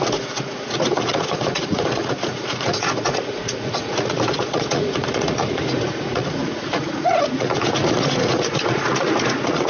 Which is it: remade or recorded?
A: remade